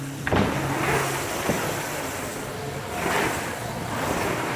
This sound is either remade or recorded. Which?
recorded